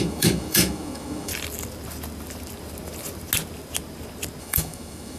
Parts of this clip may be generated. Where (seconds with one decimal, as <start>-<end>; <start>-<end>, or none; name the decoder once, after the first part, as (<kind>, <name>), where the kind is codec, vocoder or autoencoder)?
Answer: 0.0-1.3 (autoencoder, DAC-VAE); 4.4-5.2